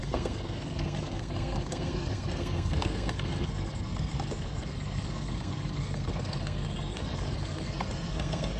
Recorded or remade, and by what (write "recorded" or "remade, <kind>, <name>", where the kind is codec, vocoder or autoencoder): remade, codec, SNAC